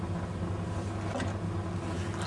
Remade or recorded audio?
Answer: recorded